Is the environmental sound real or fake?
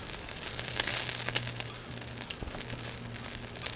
real